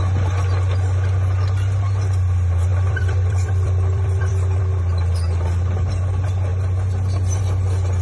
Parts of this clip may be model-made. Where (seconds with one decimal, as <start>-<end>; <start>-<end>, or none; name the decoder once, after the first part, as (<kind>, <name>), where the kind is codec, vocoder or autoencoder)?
2.7-4.6 (vocoder, BigVGAN v2)

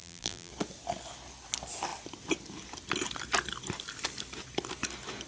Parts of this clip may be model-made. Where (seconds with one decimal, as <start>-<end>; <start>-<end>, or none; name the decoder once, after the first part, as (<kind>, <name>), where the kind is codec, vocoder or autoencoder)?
0.0-0.5 (vocoder, BigVGAN v2)